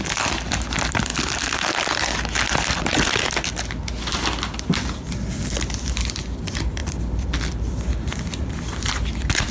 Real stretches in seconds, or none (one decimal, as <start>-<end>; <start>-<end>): 1.1-5.8